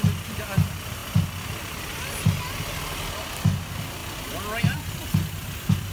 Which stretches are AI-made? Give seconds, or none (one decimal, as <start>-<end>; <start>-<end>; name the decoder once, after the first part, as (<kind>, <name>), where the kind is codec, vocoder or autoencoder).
none